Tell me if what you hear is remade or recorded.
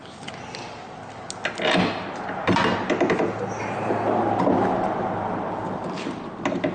recorded